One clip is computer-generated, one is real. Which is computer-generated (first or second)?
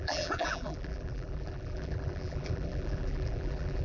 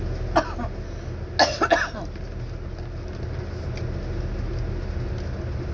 first